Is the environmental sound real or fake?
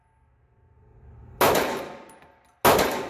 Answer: real